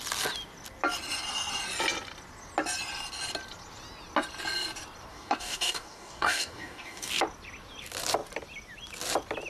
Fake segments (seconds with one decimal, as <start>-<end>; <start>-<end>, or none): 5.1-7.1